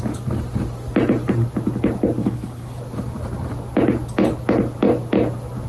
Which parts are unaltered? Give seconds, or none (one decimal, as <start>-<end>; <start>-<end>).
0.0-2.2; 2.8-5.7